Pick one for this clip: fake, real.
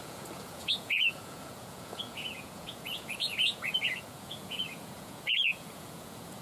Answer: fake